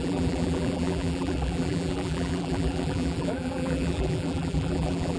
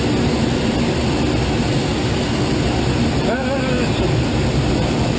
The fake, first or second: first